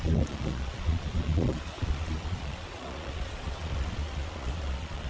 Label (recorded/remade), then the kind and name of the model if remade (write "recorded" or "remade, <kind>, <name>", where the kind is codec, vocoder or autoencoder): remade, vocoder, Vocos